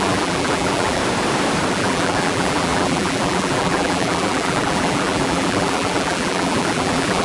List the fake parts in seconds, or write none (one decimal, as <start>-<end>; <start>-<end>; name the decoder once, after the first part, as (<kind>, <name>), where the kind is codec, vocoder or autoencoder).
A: 0.0-1.0 (vocoder, BigVGAN v2); 1.7-7.2